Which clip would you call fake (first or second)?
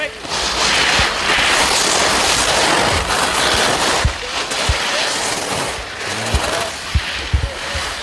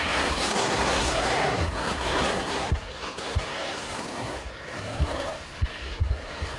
second